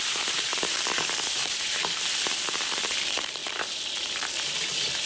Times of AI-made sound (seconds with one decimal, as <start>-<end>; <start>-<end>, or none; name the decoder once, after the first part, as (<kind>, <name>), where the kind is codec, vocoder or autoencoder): 0.0-3.4 (vocoder, BigVGAN v2)